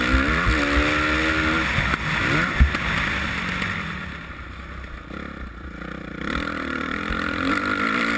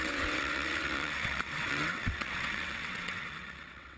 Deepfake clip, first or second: second